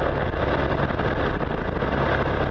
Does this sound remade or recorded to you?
recorded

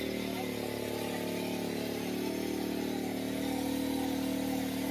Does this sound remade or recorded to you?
recorded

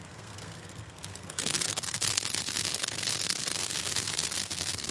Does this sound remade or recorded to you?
remade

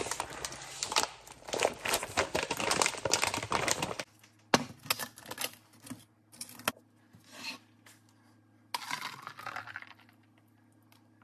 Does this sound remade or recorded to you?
recorded